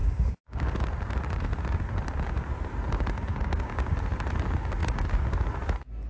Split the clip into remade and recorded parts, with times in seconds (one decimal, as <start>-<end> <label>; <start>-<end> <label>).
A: 0.0-0.7 remade; 0.7-3.3 recorded; 3.3-3.9 remade; 3.9-6.1 recorded